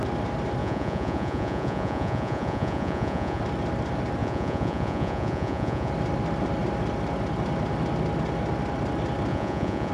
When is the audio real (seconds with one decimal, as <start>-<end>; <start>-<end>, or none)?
0.0-0.6; 3.4-4.2; 5.9-9.3